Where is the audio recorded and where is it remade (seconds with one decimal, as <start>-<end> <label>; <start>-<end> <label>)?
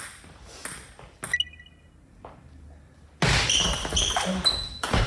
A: 0.0-0.6 remade; 0.6-3.3 recorded; 3.3-5.1 remade